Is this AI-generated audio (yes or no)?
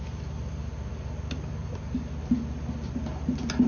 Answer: no